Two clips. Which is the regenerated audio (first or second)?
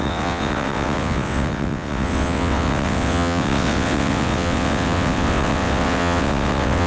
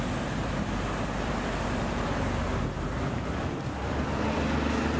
first